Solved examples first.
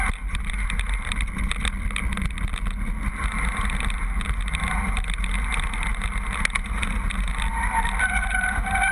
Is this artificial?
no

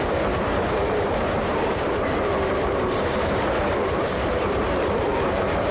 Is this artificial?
yes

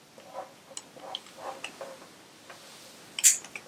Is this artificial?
no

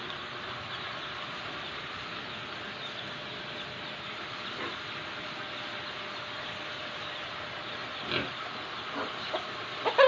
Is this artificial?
no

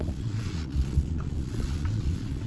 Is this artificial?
yes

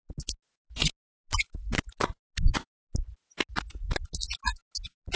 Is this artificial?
no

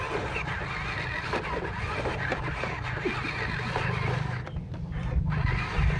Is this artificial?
no